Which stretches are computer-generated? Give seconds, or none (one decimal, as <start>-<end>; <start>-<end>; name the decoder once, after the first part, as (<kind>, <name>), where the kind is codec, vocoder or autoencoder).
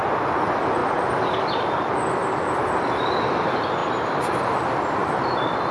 3.8-4.4 (vocoder, BigVGAN v2); 5.0-5.7